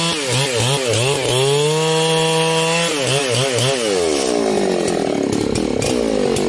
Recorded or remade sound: recorded